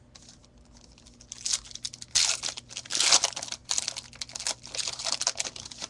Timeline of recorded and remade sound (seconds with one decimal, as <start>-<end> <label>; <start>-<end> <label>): 0.0-5.9 recorded